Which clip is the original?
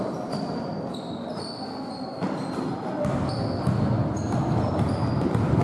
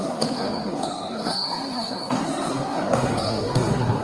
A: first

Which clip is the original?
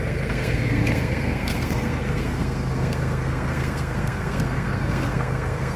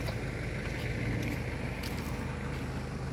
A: second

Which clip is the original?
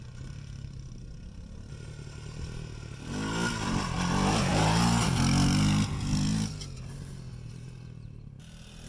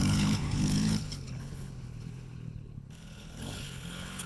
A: first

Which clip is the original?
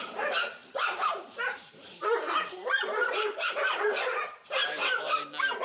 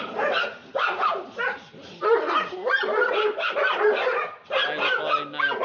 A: second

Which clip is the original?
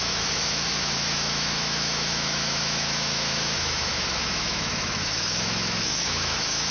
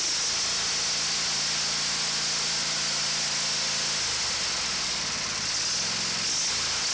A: second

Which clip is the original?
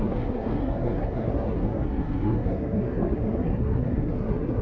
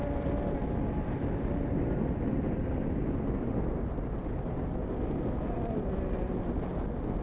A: second